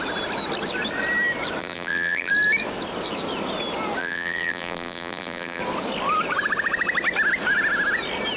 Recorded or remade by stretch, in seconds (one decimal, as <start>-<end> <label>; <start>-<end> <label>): 0.0-1.6 recorded; 1.6-2.3 remade; 2.3-4.0 recorded; 4.0-5.6 remade; 5.6-8.4 recorded